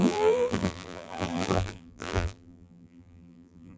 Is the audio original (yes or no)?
no